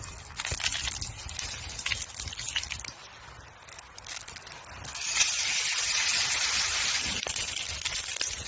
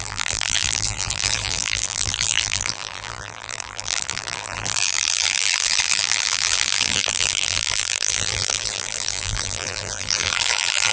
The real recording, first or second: first